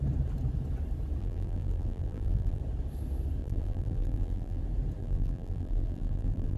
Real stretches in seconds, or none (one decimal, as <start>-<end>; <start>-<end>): 0.0-1.2; 2.6-3.4; 4.6-5.0

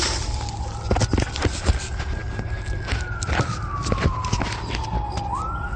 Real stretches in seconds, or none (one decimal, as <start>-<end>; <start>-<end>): 0.0-5.8

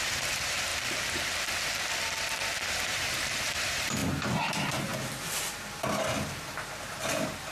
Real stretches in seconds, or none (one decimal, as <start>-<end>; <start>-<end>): 0.7-2.7; 4.9-6.8

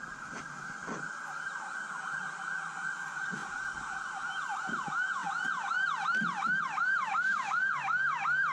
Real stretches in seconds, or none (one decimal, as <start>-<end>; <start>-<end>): 0.0-0.8; 1.4-8.5

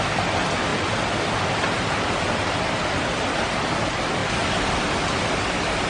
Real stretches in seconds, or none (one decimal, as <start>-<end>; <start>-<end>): 0.0-5.9

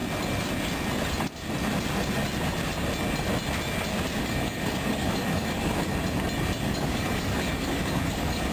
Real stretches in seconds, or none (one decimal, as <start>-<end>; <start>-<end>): 0.0-4.2; 5.9-6.6